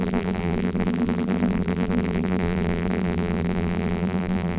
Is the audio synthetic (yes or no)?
yes